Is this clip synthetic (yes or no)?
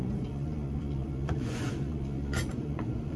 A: yes